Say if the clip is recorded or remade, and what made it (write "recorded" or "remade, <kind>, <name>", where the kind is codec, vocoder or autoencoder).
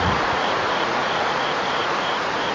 remade, vocoder, Vocos